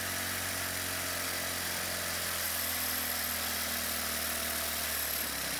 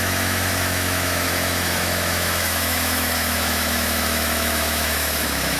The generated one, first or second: second